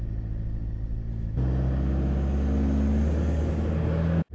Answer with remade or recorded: recorded